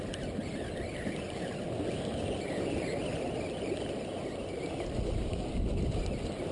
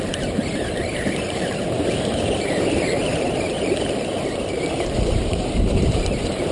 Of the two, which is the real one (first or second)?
first